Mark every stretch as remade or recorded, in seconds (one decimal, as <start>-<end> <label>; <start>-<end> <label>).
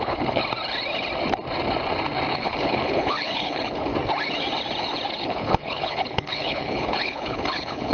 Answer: 0.0-0.4 remade; 0.4-2.3 recorded; 2.3-3.9 remade; 3.9-5.1 recorded; 5.1-7.9 remade